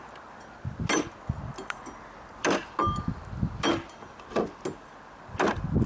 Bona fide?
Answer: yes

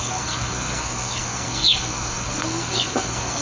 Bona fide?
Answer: no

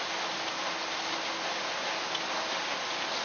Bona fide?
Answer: yes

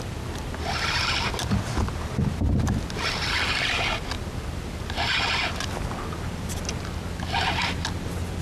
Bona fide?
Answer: yes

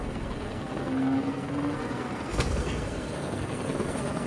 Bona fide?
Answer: no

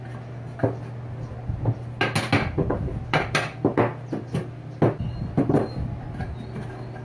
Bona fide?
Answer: yes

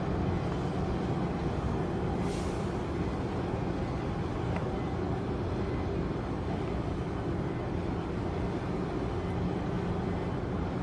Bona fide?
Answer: yes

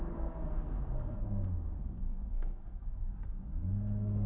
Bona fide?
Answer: no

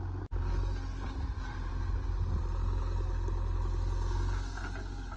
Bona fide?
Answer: yes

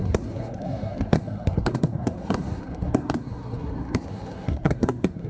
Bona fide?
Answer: no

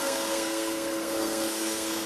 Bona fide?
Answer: no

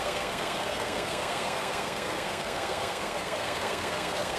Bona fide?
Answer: no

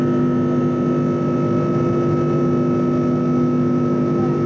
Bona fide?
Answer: yes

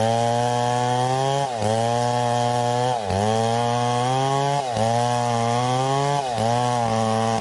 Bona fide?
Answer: yes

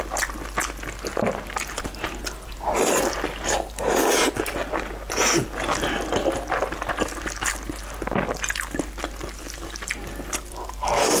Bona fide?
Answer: yes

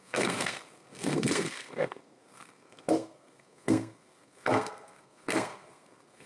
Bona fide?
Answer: no